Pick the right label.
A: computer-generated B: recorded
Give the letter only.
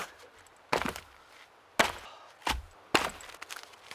B